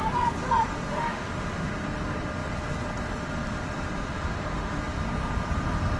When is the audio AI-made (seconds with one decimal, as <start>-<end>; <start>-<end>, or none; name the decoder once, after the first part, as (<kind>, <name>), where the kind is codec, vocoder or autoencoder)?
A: 0.9-1.7 (autoencoder, DAC-VAE); 4.1-4.8